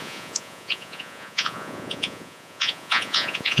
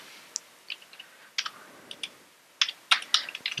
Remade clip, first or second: first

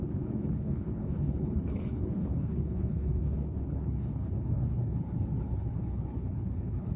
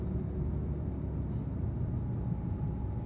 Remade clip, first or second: first